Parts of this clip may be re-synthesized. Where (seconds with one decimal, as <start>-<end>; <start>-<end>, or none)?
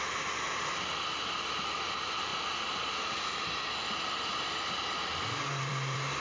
0.0-2.3; 5.6-6.2